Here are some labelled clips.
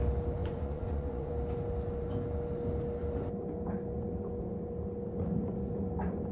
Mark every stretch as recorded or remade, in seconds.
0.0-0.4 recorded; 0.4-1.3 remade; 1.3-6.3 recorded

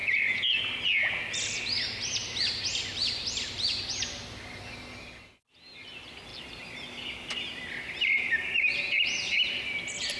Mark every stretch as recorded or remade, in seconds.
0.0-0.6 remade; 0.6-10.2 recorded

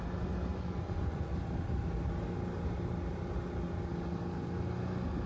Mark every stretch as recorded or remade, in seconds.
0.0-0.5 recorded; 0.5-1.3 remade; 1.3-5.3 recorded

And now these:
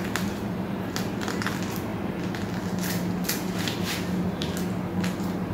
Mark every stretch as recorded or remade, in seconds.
0.0-5.5 recorded

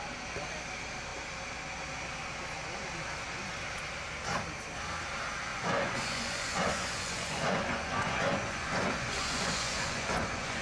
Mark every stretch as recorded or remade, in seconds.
0.0-5.5 recorded; 5.5-10.6 remade